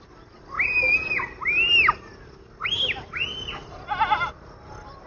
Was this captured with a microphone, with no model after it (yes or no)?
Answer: yes